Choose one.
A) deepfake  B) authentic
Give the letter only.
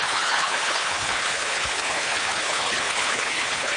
A